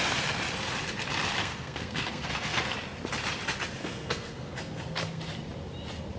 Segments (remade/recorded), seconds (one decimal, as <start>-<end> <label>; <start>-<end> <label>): 0.0-1.4 recorded; 1.4-2.6 remade; 2.6-3.8 recorded; 3.8-5.2 remade; 5.2-6.2 recorded